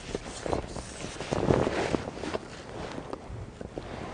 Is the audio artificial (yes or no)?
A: no